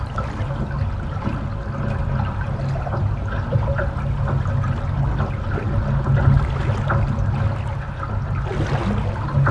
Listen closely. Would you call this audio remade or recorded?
recorded